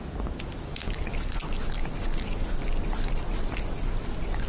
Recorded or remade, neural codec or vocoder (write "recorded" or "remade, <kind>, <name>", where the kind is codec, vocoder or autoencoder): recorded